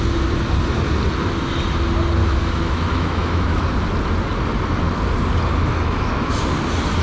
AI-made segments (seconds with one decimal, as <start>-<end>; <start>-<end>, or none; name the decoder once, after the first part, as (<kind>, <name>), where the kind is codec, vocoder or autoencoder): 2.2-3.6 (autoencoder, DAC-VAE); 5.6-6.4